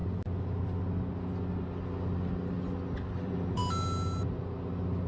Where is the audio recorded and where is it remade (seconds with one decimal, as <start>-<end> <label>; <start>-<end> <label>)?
0.0-3.1 recorded; 3.1-3.6 remade; 3.6-5.1 recorded